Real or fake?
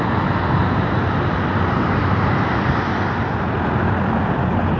real